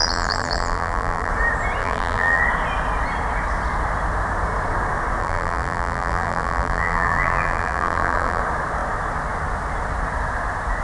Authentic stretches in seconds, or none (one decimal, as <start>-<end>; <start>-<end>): 1.3-1.8; 2.4-5.2; 8.4-10.8